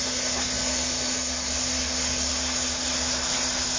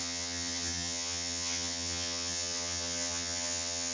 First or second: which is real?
first